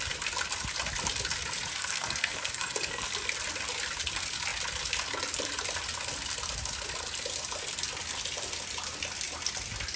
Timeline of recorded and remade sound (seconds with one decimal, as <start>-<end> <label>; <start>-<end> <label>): 0.0-1.7 recorded; 1.7-3.1 remade; 3.1-10.0 recorded